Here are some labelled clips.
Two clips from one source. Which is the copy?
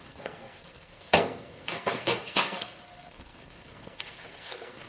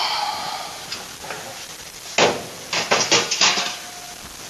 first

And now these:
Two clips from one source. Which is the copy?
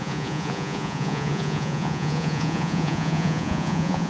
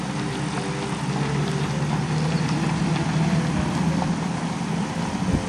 first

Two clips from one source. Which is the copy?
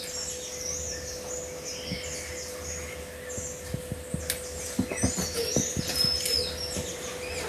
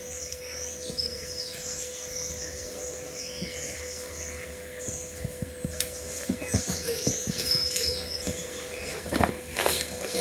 second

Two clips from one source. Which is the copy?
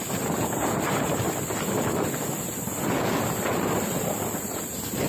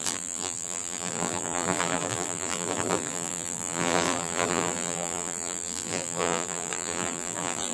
second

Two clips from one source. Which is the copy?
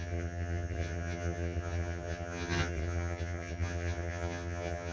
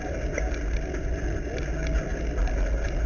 first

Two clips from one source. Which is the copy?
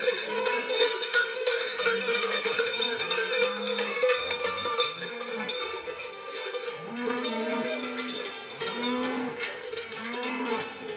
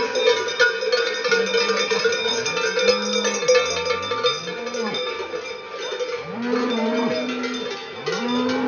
first